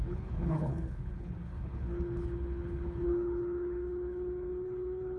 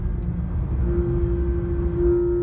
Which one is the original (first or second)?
second